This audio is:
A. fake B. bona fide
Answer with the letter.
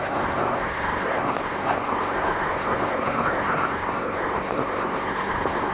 A